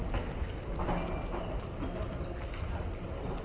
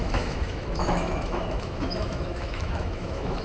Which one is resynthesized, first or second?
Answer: second